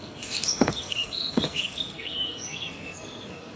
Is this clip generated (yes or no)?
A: yes